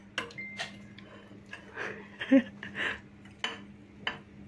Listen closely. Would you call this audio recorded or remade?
recorded